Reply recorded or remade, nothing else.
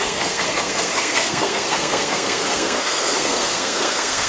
remade